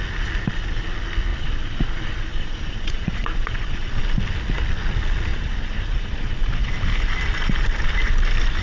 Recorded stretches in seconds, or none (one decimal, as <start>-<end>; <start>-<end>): 0.0-1.3; 4.0-5.3; 6.7-8.6